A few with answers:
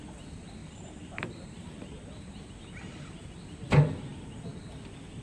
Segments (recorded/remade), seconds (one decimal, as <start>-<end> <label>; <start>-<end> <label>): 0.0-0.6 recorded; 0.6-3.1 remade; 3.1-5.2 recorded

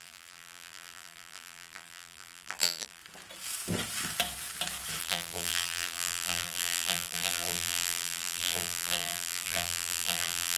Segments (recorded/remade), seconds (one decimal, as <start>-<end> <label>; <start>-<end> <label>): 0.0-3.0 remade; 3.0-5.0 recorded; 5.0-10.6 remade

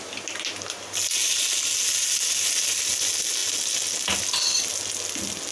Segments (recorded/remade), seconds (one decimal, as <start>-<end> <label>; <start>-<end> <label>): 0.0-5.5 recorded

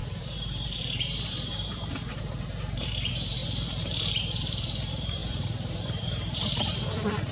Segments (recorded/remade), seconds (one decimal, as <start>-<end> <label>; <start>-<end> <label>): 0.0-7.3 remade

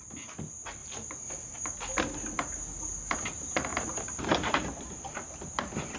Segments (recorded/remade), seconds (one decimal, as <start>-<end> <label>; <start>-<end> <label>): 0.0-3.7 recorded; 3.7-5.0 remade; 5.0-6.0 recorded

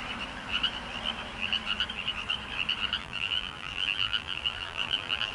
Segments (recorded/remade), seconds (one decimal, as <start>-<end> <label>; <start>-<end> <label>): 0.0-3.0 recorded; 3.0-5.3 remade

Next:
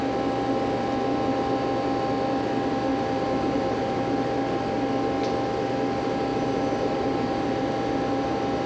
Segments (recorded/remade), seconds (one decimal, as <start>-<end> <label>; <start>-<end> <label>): 0.0-2.9 recorded; 2.9-4.0 remade; 4.0-6.3 recorded; 6.3-7.6 remade; 7.6-8.7 recorded

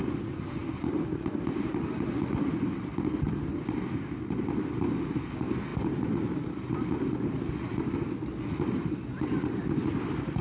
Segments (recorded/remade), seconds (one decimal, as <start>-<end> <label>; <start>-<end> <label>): 0.0-0.6 recorded; 0.6-2.1 remade; 2.1-2.9 recorded; 2.9-4.8 remade; 4.8-10.4 recorded